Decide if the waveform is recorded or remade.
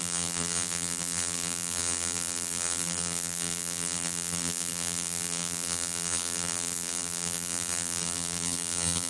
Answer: remade